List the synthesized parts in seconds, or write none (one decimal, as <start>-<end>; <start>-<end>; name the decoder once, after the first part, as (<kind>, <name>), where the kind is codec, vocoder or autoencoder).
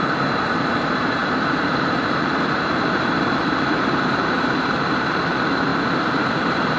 0.0-5.7 (vocoder, BigVGAN v2)